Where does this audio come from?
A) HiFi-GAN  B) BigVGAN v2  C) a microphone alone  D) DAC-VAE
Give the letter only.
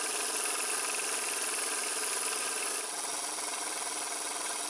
C